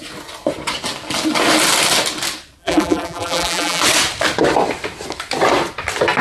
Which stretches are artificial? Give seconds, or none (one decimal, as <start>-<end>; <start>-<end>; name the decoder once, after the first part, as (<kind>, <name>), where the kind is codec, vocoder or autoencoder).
2.6-3.8 (vocoder, BigVGAN v2)

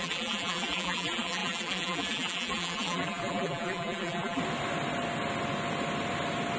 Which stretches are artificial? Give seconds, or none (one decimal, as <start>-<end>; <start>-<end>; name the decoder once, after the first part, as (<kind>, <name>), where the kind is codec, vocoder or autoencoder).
0.0-4.4 (vocoder, BigVGAN v2)

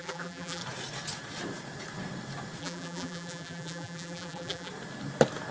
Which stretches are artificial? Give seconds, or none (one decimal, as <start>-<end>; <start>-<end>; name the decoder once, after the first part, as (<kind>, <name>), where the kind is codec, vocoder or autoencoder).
0.0-0.6 (vocoder, BigVGAN v2); 2.6-4.7

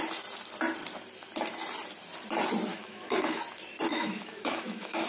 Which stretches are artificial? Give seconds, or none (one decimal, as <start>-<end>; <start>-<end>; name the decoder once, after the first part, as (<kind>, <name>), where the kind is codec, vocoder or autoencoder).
2.7-3.4 (autoencoder, DAC-VAE); 3.9-5.1